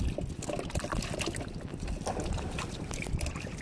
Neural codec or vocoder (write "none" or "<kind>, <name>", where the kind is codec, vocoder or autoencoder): none